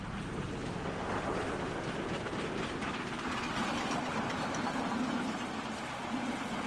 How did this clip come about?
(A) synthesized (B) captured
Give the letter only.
B